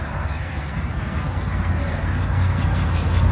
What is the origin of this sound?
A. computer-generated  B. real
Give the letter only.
A